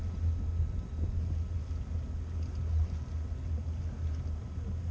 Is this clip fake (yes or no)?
no